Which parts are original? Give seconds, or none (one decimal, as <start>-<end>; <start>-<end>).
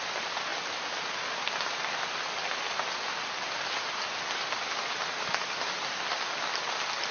0.0-7.1